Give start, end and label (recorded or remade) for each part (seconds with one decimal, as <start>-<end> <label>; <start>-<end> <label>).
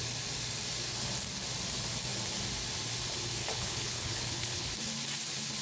0.0-3.4 recorded; 3.4-4.7 remade; 4.7-5.6 recorded